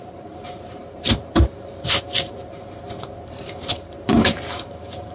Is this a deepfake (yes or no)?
yes